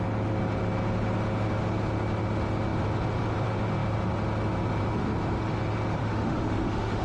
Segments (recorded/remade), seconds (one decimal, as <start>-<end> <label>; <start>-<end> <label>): 0.0-6.0 recorded; 6.0-7.0 remade